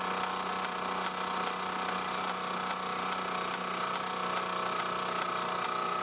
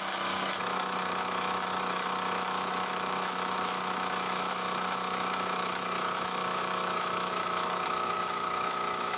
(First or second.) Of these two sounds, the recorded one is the first